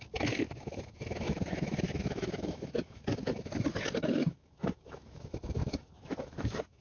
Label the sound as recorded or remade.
remade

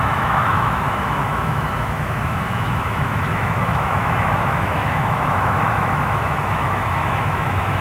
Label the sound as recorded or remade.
remade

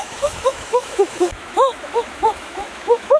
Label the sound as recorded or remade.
remade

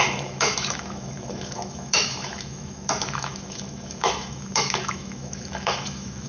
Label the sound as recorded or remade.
remade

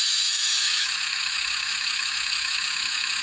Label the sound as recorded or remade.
remade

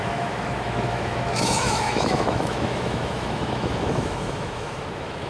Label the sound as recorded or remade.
remade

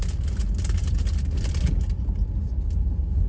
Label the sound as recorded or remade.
recorded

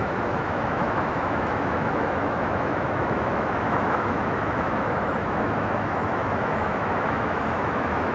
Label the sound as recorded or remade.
remade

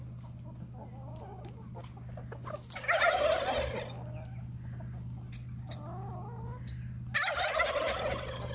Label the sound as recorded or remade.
recorded